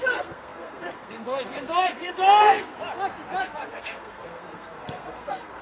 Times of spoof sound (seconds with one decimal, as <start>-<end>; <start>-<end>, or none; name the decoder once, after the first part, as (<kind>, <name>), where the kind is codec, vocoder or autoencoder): 0.0-2.8 (codec, SNAC); 3.4-5.6